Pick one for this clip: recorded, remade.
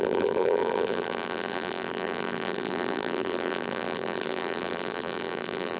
remade